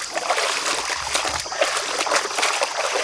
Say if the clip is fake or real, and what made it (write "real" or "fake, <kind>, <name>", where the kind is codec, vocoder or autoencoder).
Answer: real